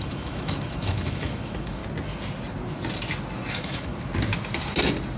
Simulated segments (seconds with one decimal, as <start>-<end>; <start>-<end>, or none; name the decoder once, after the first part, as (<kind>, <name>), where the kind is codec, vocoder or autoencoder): 0.0-1.8 (autoencoder, DAC-VAE); 3.5-3.9